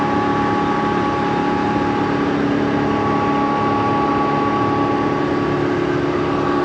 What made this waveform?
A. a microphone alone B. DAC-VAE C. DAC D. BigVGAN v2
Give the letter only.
A